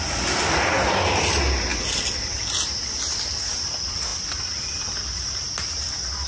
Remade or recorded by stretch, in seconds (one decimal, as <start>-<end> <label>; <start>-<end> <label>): 0.0-6.3 recorded